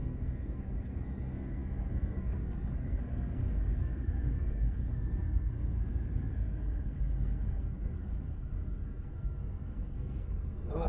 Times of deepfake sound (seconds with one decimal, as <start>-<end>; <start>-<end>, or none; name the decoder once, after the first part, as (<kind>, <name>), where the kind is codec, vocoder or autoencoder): 0.0-10.9 (codec, SNAC)